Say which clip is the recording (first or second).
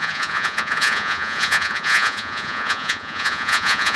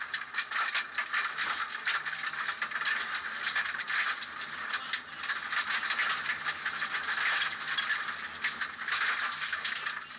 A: second